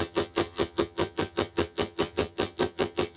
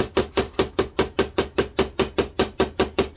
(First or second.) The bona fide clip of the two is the second